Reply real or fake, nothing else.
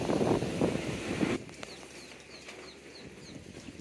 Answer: real